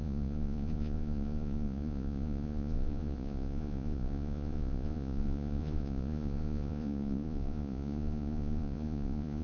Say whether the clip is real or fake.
fake